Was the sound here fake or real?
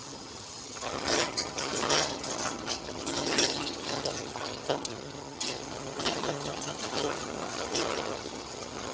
fake